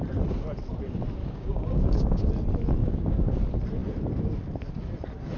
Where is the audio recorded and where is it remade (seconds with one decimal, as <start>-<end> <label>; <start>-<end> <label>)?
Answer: 0.0-1.2 recorded; 1.2-2.3 remade; 2.3-2.8 recorded; 2.8-3.4 remade; 3.4-5.4 recorded